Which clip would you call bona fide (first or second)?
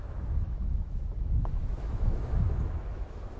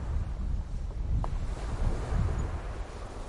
second